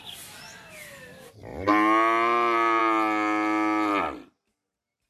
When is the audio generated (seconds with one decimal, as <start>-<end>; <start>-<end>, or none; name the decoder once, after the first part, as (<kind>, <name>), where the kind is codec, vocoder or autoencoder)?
none